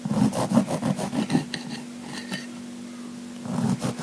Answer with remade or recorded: recorded